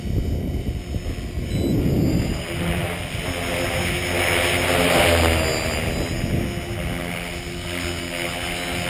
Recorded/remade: recorded